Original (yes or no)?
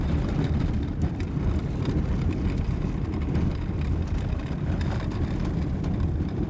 no